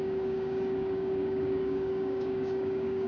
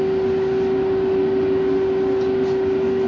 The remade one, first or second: first